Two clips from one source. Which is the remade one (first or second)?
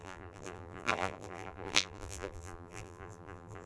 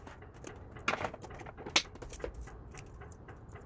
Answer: first